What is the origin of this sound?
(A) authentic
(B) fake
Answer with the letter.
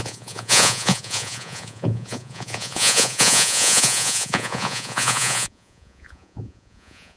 B